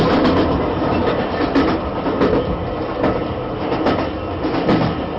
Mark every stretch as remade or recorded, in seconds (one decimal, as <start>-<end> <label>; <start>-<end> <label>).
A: 0.0-5.2 recorded